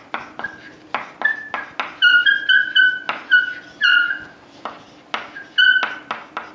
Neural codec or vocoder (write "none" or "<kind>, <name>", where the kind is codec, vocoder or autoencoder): none